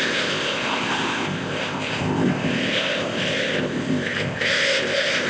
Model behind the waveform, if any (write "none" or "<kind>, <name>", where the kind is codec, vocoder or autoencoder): codec, ZipCodec